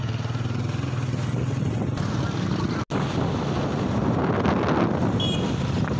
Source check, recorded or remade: recorded